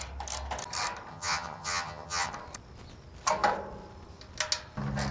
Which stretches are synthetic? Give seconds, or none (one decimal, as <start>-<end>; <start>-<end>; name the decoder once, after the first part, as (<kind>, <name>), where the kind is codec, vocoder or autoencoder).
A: 1.1-2.3 (vocoder, HiFi-GAN)